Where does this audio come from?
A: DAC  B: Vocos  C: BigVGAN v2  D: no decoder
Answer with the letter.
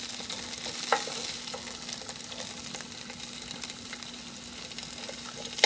D